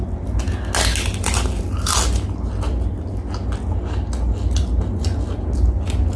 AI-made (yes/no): no